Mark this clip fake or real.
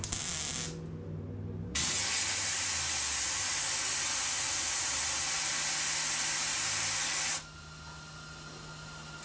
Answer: real